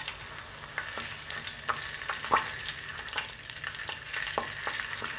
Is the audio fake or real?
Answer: real